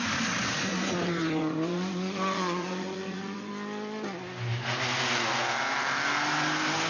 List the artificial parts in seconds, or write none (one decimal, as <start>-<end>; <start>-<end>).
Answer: 0.7-3.5